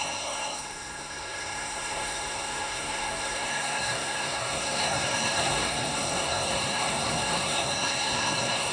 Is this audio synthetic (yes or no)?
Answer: yes